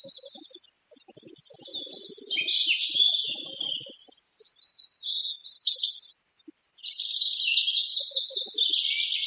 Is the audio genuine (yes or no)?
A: yes